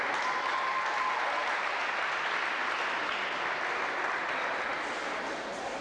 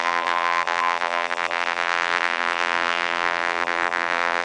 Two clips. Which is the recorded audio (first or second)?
first